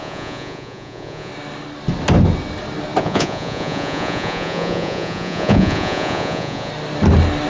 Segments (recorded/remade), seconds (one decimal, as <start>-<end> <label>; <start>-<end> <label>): 0.0-1.3 remade; 1.3-3.0 recorded; 3.0-6.7 remade; 6.7-7.5 recorded